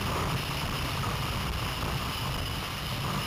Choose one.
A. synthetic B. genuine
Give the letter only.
A